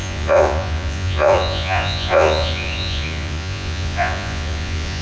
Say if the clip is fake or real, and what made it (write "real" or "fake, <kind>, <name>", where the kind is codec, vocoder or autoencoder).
fake, vocoder, Vocos